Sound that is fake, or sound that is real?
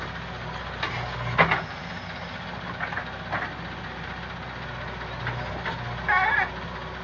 real